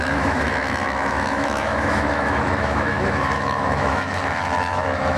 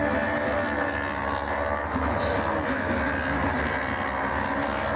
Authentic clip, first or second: second